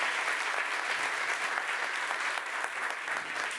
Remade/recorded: recorded